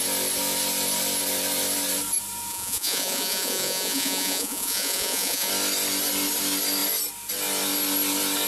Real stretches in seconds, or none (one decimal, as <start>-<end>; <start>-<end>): 0.0-2.5; 5.5-8.5